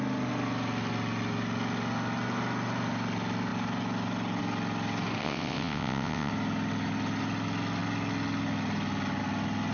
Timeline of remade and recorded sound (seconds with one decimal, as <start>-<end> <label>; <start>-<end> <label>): 0.0-5.2 recorded; 5.2-6.3 remade; 6.3-9.7 recorded